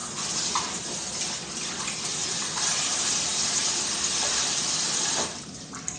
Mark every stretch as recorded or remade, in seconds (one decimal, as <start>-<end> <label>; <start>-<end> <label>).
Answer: 0.0-6.0 recorded